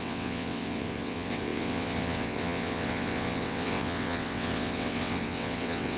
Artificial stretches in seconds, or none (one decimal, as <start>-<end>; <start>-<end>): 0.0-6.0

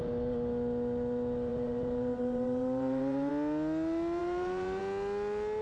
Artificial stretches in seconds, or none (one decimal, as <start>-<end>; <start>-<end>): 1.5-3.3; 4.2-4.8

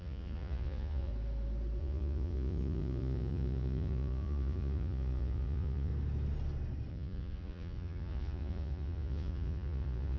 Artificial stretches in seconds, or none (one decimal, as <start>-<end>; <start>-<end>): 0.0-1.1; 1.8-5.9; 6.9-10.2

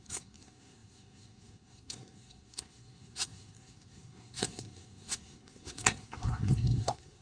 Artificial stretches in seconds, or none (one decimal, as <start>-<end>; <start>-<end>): 0.0-7.2